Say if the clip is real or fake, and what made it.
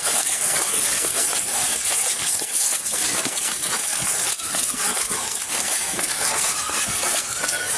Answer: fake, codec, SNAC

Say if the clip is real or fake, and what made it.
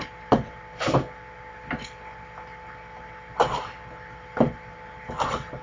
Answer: real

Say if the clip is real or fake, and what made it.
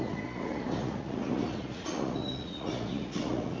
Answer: fake, vocoder, Vocos